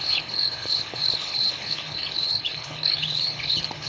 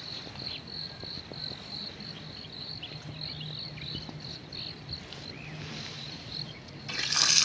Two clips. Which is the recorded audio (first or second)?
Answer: second